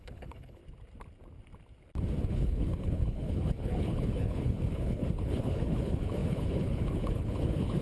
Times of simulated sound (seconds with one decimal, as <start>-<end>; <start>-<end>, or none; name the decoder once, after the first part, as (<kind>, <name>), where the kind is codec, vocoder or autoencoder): 0.0-0.6 (codec, HILCodec); 2.3-7.8